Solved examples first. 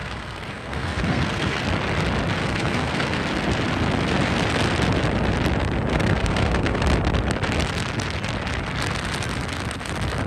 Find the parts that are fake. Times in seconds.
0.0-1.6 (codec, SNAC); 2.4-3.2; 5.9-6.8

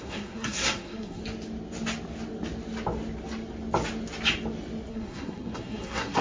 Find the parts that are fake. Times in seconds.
0.0-1.2 (codec, SNAC); 4.9-6.2

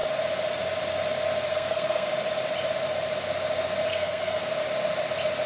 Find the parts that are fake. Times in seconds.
1.5-2.1 (codec, SNAC); 3.9-4.5

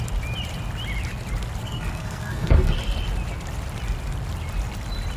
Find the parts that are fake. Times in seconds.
1.6-2.8 (codec, SNAC)

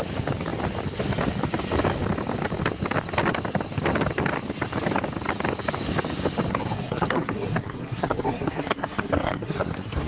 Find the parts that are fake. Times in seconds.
6.5-10.1 (codec, SNAC)

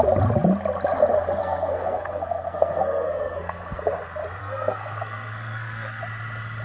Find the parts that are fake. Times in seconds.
1.4-3.8 (codec, SNAC); 4.4-6.0